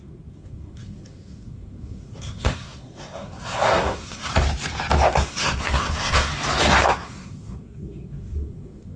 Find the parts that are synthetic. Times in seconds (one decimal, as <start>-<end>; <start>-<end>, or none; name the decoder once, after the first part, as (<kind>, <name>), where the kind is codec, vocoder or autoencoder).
0.0-4.3 (codec, SNAC); 5.1-6.3; 6.9-9.0